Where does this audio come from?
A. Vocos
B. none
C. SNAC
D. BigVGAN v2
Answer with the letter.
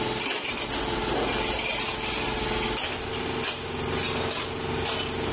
B